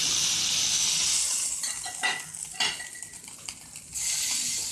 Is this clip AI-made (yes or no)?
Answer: no